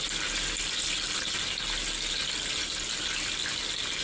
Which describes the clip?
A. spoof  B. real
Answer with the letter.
B